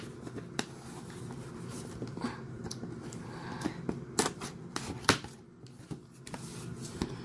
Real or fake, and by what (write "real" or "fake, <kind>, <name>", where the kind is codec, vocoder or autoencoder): real